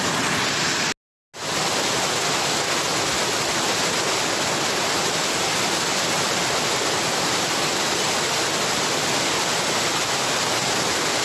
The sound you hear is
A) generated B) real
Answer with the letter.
B